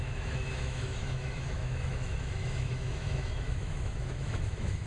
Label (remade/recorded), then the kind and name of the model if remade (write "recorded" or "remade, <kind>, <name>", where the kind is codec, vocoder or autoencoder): remade, autoencoder, DAC-VAE